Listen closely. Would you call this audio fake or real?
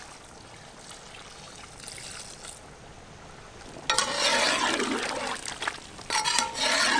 real